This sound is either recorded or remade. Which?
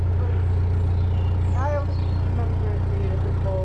recorded